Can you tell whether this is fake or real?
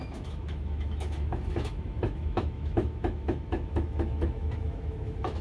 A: fake